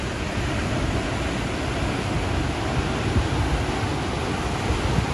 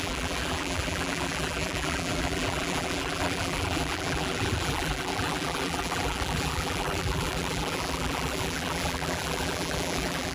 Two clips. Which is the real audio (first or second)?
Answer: first